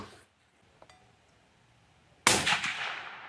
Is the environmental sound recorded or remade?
recorded